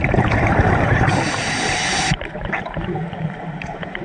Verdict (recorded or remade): remade